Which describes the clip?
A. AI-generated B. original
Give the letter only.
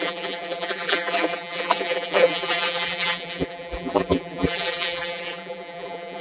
A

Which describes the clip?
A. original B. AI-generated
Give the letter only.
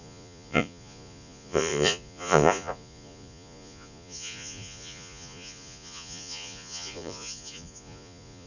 B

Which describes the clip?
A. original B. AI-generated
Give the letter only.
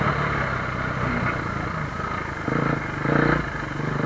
A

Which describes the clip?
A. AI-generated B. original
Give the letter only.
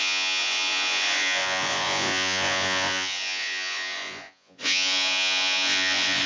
A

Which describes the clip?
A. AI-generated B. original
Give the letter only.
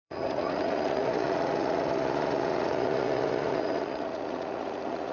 A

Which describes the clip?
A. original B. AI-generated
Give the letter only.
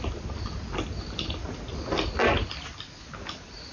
A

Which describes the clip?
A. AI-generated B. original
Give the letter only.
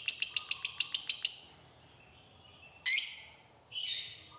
B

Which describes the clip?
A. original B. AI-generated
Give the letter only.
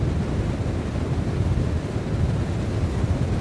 A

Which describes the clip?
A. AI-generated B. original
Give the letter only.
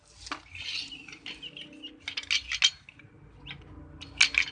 B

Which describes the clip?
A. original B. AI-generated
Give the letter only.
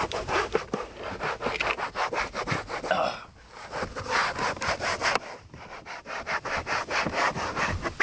A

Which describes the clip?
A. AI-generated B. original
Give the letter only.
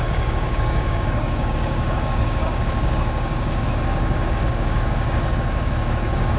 A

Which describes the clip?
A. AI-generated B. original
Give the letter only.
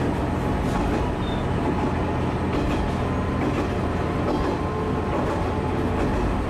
B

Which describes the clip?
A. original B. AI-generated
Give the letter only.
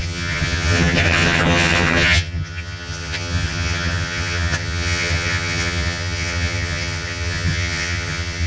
B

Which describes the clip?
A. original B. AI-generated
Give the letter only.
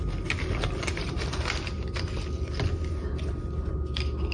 A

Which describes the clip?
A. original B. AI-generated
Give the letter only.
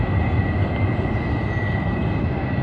A